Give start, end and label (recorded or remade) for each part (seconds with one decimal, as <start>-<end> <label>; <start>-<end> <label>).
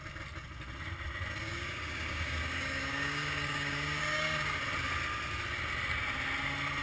0.0-1.4 recorded; 1.4-4.6 remade; 4.6-6.8 recorded